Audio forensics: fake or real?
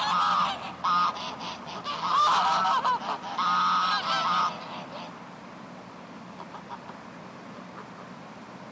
real